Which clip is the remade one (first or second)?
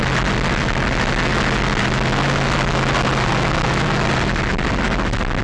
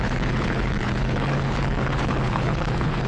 second